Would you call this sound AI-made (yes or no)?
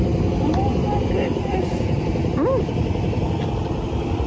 no